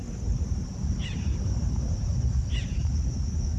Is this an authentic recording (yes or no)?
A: yes